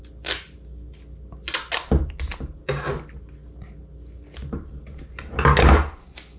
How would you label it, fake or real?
real